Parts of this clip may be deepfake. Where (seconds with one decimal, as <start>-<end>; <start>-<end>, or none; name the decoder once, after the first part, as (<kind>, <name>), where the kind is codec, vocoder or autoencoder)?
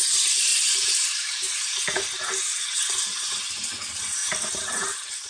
none